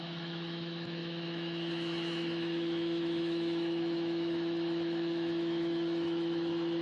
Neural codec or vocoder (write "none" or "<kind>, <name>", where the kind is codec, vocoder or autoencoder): autoencoder, DAC-VAE